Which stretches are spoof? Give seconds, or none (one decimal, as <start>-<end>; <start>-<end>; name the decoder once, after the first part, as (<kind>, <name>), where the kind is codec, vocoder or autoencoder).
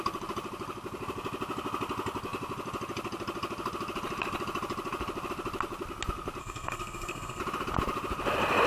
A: 6.4-7.4 (codec, SNAC)